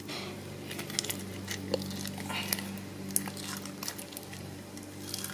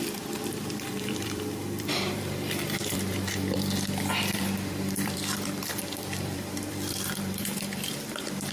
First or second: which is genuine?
first